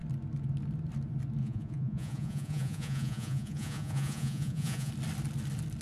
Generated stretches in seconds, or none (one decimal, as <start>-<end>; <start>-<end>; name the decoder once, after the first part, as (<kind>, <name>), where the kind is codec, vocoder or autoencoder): 1.4-4.9 (vocoder, Vocos)